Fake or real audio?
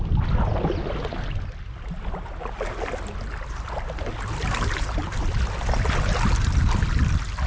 real